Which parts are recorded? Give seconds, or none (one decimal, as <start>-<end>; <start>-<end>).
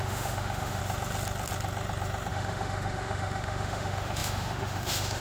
0.8-2.3